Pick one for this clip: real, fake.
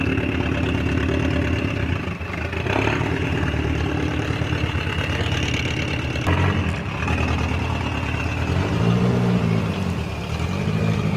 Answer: real